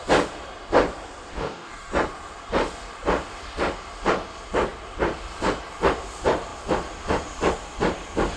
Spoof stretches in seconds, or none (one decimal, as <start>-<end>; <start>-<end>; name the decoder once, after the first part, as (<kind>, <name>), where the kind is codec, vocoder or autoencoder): 1.3-1.9 (codec, DAC)